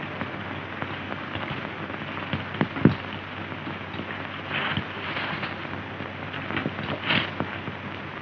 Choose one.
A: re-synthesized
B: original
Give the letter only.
B